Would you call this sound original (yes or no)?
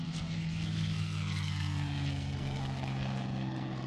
no